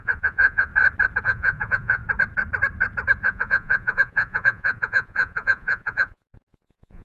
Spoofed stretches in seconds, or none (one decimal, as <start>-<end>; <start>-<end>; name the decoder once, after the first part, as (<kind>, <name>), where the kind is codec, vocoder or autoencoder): 0.0-0.7 (vocoder, Vocos); 1.2-2.0; 3.2-7.0